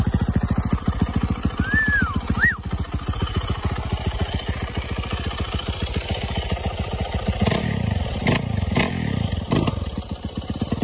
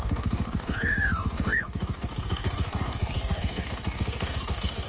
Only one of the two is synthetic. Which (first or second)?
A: second